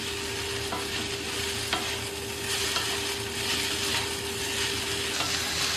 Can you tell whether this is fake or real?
real